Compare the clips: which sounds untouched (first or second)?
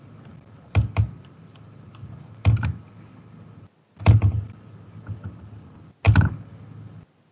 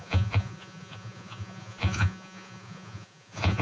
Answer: first